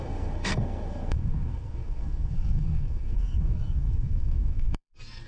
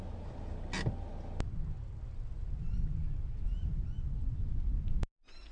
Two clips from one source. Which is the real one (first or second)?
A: second